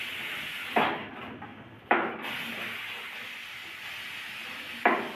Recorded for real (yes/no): yes